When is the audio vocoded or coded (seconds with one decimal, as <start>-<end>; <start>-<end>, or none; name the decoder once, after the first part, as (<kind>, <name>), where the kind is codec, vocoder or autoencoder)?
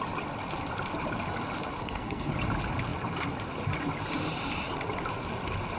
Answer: 1.8-2.3 (codec, SNAC)